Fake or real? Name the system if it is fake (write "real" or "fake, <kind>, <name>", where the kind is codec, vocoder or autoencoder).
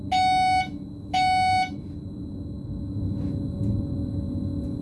real